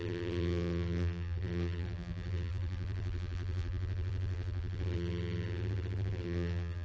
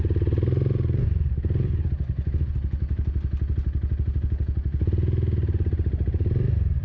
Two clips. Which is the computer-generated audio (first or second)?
first